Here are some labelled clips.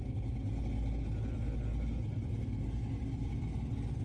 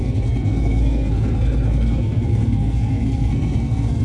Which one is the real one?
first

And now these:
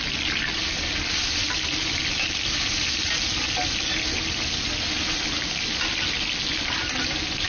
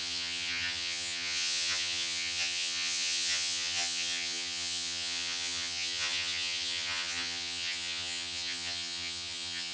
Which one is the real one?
first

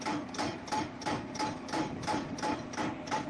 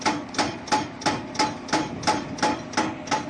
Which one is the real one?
second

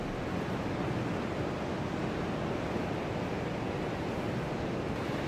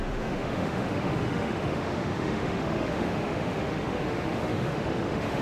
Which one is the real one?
first